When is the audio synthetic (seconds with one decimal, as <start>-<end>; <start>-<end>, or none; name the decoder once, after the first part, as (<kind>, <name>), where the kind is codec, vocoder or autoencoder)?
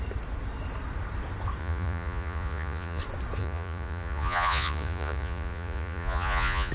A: 1.6-3.0 (vocoder, Vocos); 3.4-6.7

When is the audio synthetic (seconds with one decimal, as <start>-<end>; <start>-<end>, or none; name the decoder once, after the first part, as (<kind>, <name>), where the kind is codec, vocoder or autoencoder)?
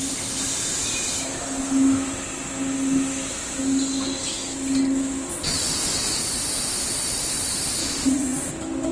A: 5.3-6.2 (vocoder, Vocos); 7.8-8.5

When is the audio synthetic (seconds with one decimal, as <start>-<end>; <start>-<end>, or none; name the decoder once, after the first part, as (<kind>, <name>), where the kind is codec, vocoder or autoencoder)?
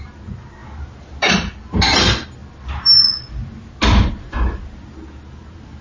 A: none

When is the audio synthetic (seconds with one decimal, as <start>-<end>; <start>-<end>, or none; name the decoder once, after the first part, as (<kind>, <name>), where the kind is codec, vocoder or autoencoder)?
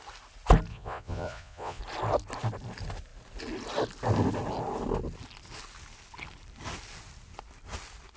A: 0.7-1.8 (vocoder, Vocos)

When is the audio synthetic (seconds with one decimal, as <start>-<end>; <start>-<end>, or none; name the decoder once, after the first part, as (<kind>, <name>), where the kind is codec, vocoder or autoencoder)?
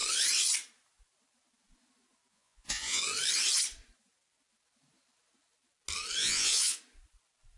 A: 2.3-3.0 (vocoder, Vocos); 6.2-6.8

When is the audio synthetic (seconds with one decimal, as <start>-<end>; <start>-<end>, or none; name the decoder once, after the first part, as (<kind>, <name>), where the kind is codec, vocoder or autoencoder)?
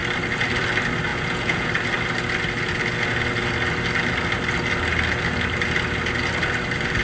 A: 1.1-1.7 (vocoder, Vocos)